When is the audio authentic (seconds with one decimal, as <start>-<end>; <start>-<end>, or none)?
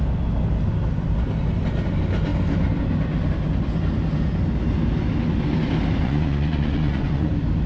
0.0-6.0; 7.3-7.7